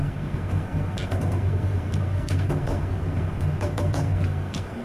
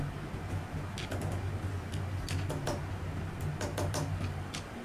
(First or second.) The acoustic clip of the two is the second